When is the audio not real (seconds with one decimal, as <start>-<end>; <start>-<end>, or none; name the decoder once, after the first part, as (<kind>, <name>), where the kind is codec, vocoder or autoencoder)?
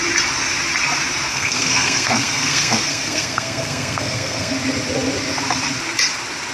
1.3-4.5 (codec, SNAC)